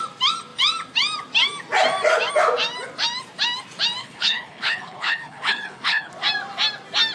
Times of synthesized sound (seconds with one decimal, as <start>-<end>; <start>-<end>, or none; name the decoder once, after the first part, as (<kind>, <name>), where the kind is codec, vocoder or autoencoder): 4.0-6.1 (codec, HILCodec)